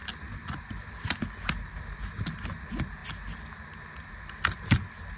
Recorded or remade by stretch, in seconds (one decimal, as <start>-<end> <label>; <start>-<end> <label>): 0.0-5.2 recorded